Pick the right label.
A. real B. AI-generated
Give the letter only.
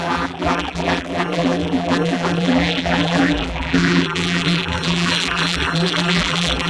B